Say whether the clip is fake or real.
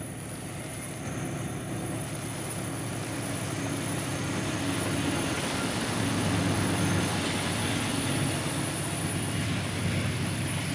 real